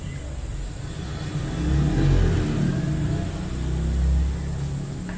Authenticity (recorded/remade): recorded